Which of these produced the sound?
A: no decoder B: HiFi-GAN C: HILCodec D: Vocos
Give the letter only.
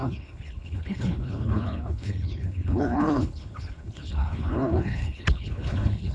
C